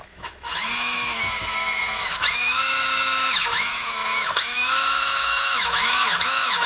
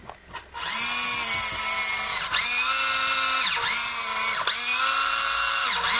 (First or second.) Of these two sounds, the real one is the second